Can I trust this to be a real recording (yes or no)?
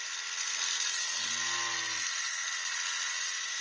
yes